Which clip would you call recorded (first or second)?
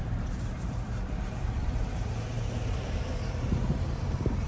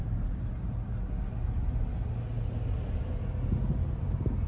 second